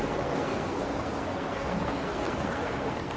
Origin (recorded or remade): remade